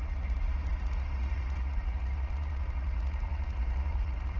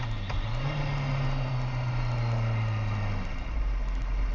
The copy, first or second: first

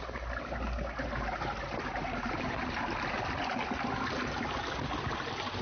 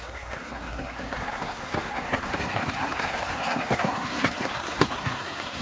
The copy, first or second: second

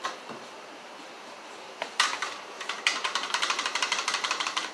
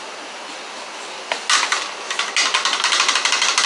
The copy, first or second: first